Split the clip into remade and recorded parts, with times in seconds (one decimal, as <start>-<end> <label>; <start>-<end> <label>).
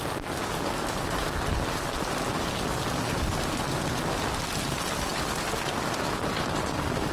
0.0-7.1 recorded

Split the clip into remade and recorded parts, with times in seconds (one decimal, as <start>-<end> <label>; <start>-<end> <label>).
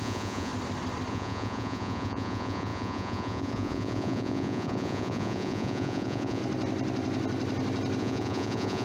0.0-0.5 remade; 0.5-1.1 recorded; 1.1-6.4 remade; 6.4-8.0 recorded; 8.0-8.8 remade